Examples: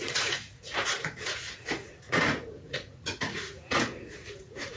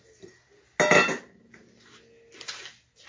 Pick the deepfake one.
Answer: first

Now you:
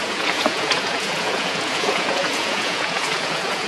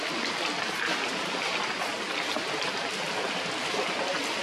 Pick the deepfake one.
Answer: first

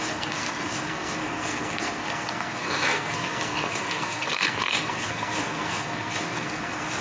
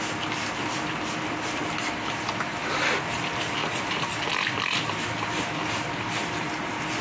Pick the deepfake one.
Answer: first